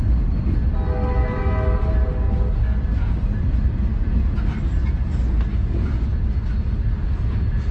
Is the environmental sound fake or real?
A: real